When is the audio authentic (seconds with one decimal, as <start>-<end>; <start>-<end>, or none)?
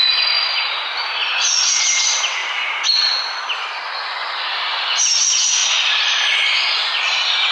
0.6-7.5